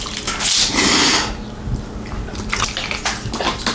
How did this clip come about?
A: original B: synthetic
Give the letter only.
A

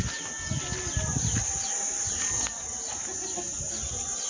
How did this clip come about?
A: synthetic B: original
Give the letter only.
B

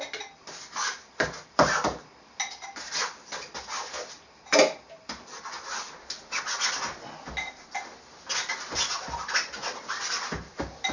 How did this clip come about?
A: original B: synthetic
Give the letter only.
A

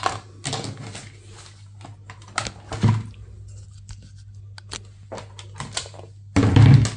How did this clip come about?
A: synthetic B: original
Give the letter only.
B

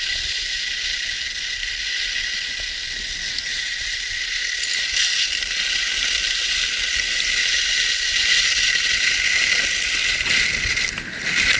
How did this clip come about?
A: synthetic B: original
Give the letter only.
B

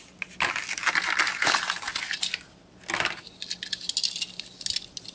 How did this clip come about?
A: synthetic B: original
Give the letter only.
B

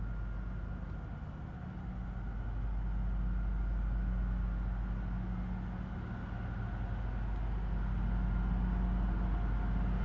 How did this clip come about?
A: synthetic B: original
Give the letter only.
B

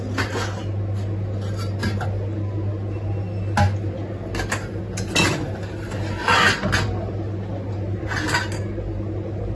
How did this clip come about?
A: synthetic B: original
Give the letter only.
B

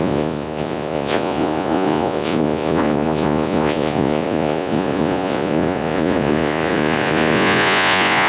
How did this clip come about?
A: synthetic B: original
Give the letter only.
A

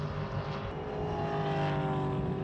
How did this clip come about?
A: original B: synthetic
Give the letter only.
A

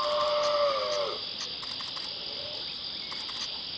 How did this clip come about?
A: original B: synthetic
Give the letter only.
A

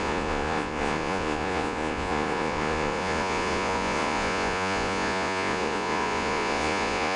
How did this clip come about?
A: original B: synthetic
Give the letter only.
B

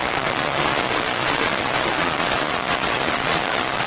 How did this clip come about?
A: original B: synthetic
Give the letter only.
B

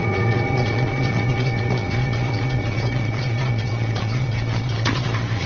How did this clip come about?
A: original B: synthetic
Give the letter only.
B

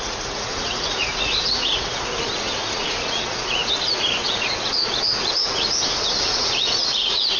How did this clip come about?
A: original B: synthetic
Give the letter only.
B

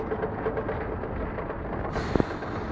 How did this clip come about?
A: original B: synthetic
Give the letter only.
A